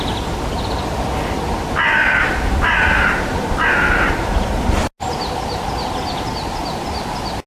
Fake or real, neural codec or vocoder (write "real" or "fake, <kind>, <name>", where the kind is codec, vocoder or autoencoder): real